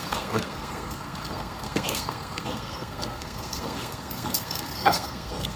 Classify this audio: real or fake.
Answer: fake